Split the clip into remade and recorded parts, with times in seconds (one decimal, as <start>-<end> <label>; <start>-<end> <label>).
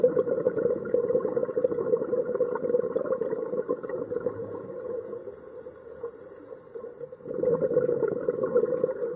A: 0.0-9.2 recorded